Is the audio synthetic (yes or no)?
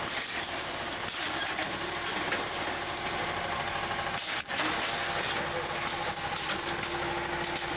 no